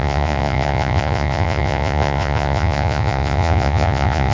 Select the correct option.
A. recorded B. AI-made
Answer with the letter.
B